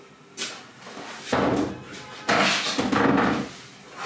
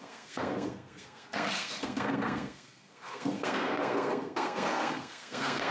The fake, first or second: second